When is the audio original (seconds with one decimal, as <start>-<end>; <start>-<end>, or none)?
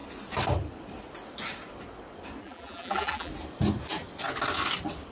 0.0-2.4; 3.3-5.1